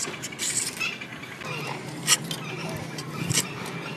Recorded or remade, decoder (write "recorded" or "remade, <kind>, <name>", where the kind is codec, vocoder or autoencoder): recorded